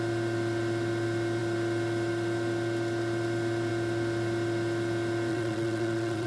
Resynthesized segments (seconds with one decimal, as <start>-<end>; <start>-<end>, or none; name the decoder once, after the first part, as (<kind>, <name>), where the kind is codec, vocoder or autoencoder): 5.3-6.3 (vocoder, Vocos)